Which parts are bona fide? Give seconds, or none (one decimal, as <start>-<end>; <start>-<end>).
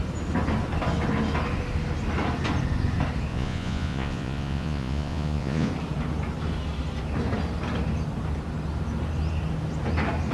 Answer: 0.0-3.3; 5.7-10.3